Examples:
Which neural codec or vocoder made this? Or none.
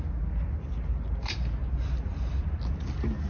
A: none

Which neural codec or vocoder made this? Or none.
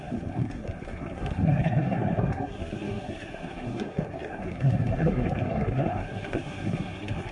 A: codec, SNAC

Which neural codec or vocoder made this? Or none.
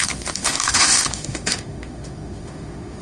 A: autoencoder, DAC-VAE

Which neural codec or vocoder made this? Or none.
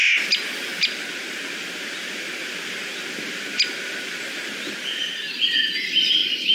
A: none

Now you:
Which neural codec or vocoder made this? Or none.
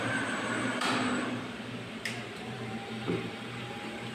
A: vocoder, BigVGAN v2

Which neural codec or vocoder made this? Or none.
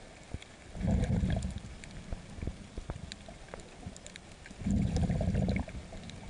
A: none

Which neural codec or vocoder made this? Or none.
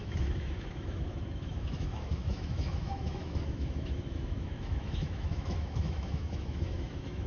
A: autoencoder, DAC-VAE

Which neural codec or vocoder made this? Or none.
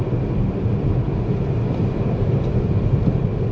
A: none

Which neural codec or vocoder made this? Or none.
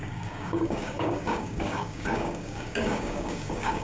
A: codec, DAC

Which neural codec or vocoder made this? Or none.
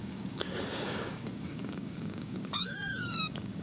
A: codec, DAC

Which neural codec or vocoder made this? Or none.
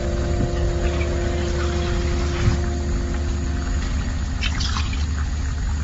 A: vocoder, BigVGAN v2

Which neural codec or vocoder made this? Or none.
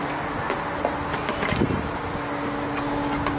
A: none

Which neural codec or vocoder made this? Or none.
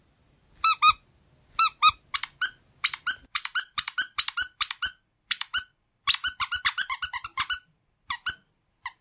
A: none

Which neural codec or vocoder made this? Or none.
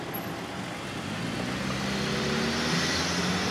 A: none